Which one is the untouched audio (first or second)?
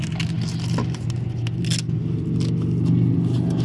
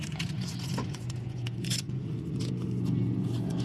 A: first